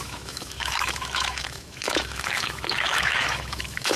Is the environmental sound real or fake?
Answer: fake